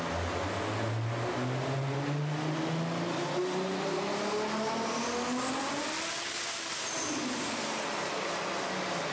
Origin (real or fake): real